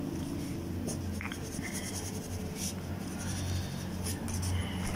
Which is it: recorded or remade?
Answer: recorded